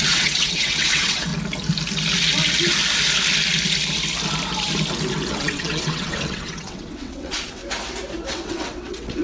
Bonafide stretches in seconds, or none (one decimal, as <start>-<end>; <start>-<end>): 1.3-5.3; 7.6-8.3

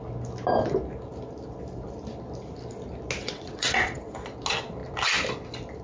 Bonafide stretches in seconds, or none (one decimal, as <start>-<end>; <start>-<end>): 0.0-3.2; 4.0-5.8

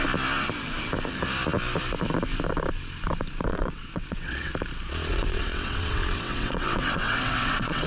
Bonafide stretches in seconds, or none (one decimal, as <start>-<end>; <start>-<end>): 0.0-3.5; 4.5-5.1

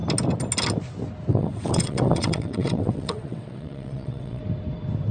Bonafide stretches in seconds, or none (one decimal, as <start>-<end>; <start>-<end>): 0.0-1.3; 4.4-5.1

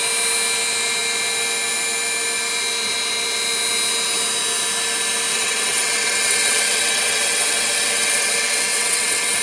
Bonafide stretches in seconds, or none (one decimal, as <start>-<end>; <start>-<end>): 0.0-5.3

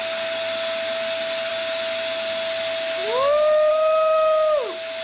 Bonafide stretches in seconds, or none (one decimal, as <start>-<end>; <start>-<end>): 0.0-5.0